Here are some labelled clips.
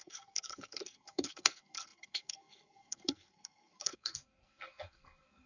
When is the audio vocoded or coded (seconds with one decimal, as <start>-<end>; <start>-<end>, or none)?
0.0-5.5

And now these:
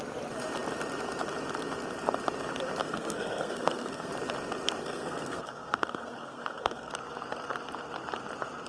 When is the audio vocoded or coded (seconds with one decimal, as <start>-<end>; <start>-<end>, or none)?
2.8-4.1; 4.8-6.9

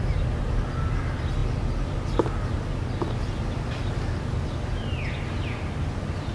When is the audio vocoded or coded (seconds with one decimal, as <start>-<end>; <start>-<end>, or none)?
none

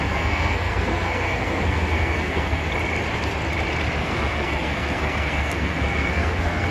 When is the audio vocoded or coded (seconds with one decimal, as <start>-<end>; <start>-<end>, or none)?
0.0-2.6; 4.0-6.7

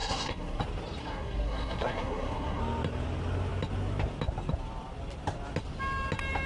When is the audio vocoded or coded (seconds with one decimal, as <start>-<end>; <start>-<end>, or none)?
0.0-0.6; 1.0-2.6

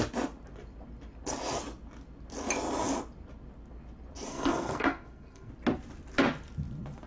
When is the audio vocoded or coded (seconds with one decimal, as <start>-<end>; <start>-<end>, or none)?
4.3-5.5